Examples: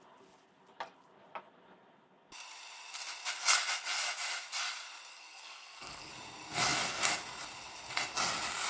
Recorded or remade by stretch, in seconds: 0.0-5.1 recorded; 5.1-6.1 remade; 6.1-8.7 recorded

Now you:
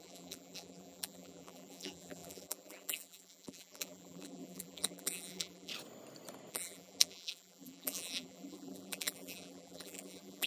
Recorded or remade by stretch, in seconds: 0.0-5.7 remade; 5.7-6.5 recorded; 6.5-10.5 remade

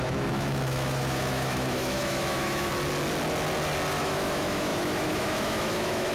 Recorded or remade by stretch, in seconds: 0.0-2.7 remade; 2.7-4.0 recorded; 4.0-6.1 remade

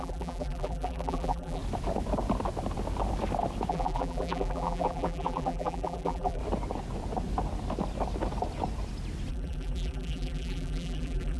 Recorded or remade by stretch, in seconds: 0.0-1.6 remade; 1.6-3.7 recorded; 3.7-6.4 remade; 6.4-9.3 recorded; 9.3-11.4 remade

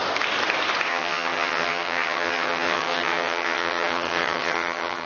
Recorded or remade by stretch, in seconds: 0.0-0.9 recorded; 0.9-5.1 remade

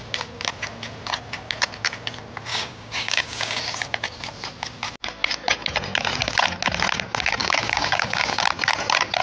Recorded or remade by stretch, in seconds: 0.0-2.5 recorded; 2.5-3.6 remade; 3.6-7.4 recorded; 7.4-8.4 remade; 8.4-9.2 recorded